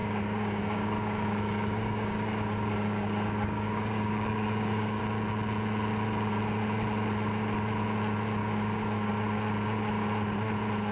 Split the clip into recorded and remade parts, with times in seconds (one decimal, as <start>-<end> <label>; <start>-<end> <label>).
0.0-5.0 remade; 5.0-8.4 recorded; 8.4-9.1 remade; 9.1-10.9 recorded